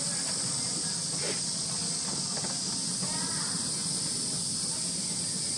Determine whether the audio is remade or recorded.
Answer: recorded